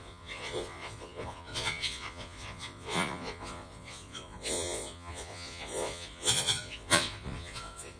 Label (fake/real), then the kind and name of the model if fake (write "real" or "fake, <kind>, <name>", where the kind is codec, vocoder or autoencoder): fake, vocoder, Vocos